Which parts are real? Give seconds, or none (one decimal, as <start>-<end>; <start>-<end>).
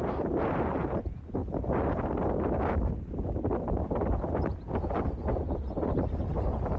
1.4-3.6; 4.5-5.1